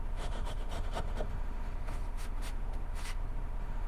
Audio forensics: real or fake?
fake